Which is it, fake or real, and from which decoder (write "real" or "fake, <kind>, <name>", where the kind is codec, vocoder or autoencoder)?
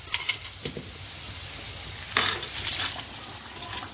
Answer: real